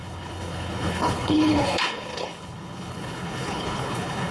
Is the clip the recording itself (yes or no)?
no